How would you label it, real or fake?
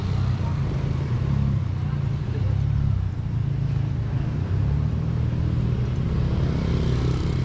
real